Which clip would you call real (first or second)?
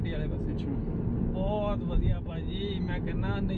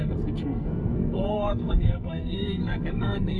first